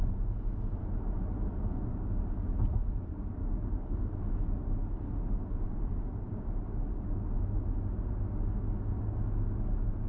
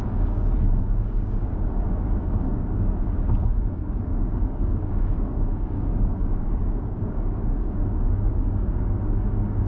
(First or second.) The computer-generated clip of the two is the second